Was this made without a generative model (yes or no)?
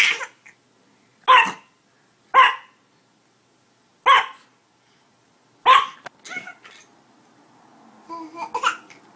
yes